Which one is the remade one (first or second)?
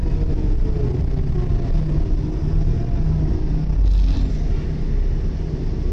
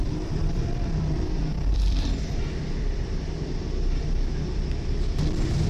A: second